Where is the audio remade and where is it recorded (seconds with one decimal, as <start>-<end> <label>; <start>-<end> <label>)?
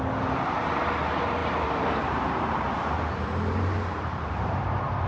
0.0-1.4 recorded; 1.4-4.5 remade; 4.5-5.1 recorded